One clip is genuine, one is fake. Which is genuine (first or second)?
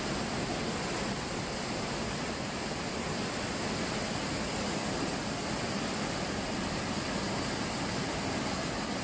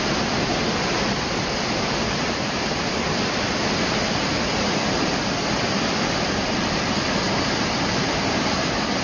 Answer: first